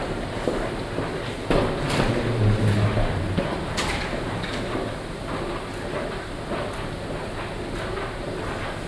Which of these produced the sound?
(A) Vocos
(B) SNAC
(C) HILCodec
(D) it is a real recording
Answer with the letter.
D